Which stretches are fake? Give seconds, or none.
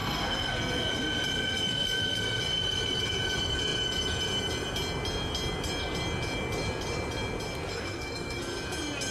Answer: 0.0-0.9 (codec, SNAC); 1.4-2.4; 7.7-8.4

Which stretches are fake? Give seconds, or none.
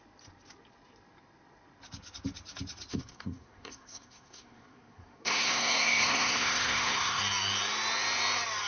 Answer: 2.9-7.2 (codec, SNAC)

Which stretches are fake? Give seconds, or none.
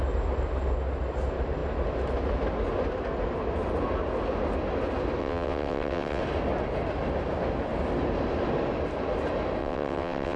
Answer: 5.2-6.2 (vocoder, WaveNeXt); 9.6-10.4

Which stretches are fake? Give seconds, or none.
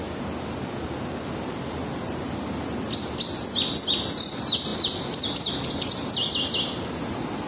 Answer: none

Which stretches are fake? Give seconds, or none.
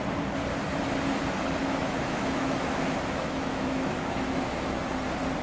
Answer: 1.6-4.8 (autoencoder, DAC-VAE)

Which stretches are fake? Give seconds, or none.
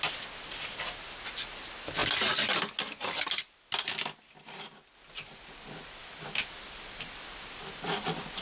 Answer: none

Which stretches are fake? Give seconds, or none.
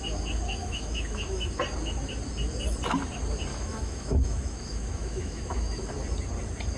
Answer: 0.6-1.5 (autoencoder, DAC-VAE); 3.5-5.9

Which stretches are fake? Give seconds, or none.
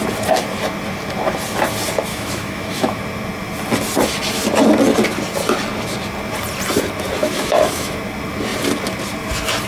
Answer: 2.1-3.0 (autoencoder, DAC-VAE); 7.2-8.0